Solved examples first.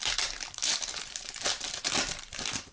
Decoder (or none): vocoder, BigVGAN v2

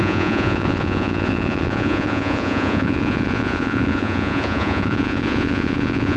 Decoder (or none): vocoder, Vocos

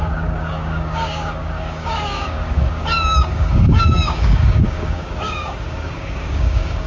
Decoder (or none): codec, DAC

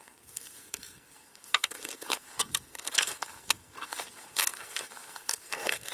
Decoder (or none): codec, SNAC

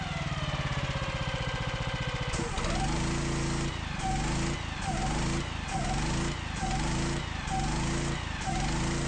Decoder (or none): none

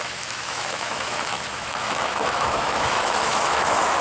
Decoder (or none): autoencoder, DAC-VAE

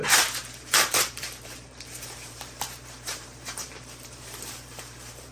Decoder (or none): vocoder, BigVGAN v2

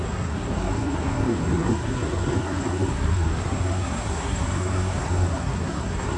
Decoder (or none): codec, SNAC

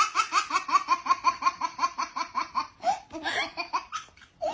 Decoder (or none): none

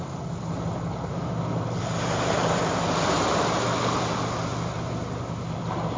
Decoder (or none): none